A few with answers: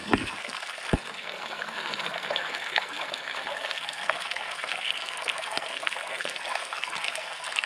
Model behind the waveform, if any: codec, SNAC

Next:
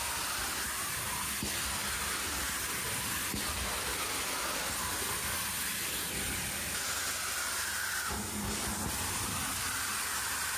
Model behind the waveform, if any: none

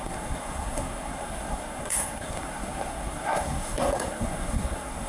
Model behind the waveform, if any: codec, SNAC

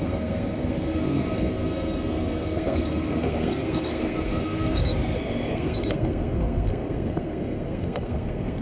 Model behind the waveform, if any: codec, SNAC